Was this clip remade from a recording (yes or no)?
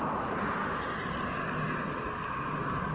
no